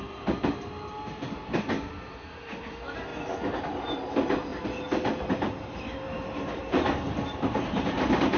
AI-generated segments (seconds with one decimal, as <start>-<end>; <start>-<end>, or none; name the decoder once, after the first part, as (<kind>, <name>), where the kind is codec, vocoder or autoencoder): 0.0-3.1 (vocoder, BigVGAN v2); 3.6-4.5; 5.3-8.4